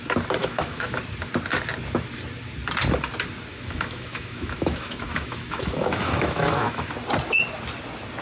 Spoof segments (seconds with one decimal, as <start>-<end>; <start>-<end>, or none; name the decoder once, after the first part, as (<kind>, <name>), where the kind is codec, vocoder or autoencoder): 0.4-1.0 (autoencoder, DAC-VAE); 3.5-6.9